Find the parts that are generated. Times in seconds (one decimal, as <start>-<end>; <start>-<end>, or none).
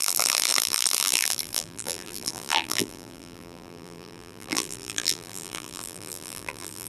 0.0-6.9